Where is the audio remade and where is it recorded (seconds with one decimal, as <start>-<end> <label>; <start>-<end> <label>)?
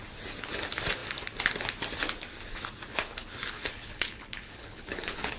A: 0.0-2.9 recorded; 2.9-5.4 remade